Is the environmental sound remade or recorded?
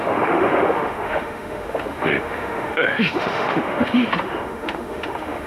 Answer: remade